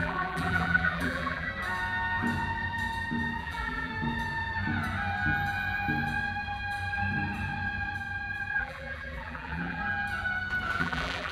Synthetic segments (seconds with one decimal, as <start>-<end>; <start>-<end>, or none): 0.0-1.5; 3.4-3.9; 8.5-9.8; 10.8-11.3

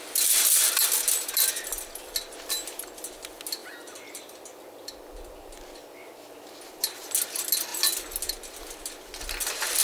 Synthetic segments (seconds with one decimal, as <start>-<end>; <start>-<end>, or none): 3.6-4.9

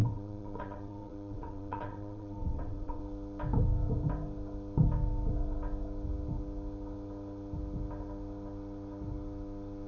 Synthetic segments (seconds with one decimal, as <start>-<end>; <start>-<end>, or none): 0.0-3.0

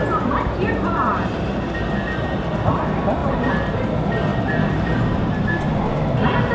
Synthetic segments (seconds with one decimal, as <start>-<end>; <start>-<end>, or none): 3.2-3.8; 4.3-6.5

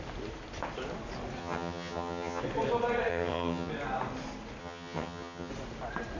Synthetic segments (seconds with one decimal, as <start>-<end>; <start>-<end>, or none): 1.4-2.4; 3.1-3.7; 4.6-5.5